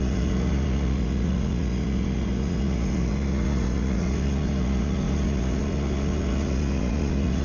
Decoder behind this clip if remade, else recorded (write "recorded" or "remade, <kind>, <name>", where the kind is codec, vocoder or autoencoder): remade, vocoder, Vocos